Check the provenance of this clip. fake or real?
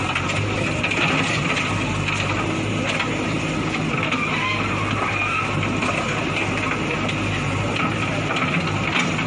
real